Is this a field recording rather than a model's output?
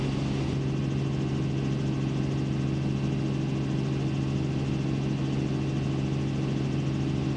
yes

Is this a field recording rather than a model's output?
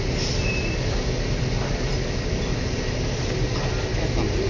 yes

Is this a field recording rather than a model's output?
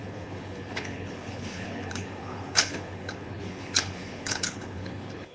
no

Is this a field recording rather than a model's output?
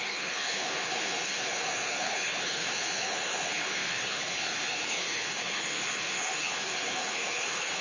no